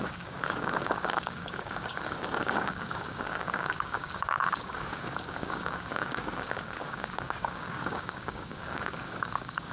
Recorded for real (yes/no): no